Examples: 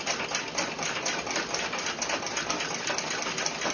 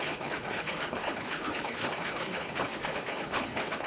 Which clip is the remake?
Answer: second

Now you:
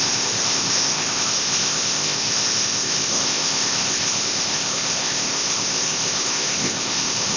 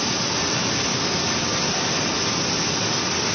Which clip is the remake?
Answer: first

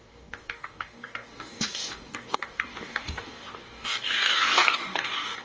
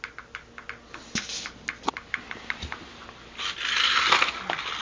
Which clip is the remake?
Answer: first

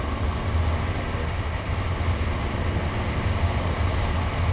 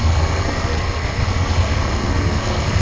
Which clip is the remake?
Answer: second